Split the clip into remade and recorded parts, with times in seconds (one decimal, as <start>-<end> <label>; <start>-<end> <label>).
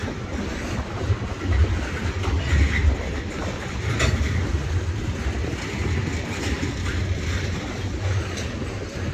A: 0.0-9.1 recorded